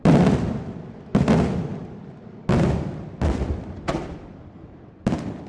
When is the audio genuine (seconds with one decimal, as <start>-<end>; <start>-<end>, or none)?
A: 0.0-5.5